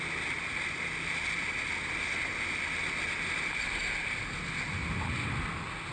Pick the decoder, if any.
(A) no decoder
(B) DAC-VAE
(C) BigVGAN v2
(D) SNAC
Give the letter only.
A